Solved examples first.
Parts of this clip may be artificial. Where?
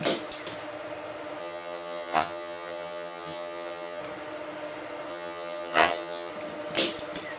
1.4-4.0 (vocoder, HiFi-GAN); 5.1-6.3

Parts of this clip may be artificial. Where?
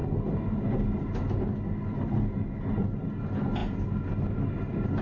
none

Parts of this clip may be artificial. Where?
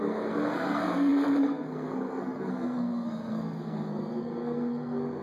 0.0-5.2 (codec, SNAC)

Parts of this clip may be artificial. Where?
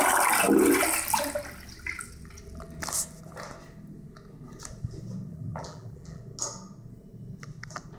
5.3-6.2 (vocoder, BigVGAN v2)